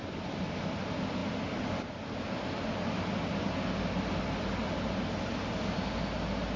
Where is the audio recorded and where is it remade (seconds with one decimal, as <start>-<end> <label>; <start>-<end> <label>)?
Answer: 0.0-6.6 recorded